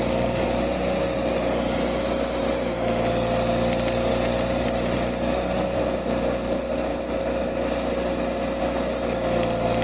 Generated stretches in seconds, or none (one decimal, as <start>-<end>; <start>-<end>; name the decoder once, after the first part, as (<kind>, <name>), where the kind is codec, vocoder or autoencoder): none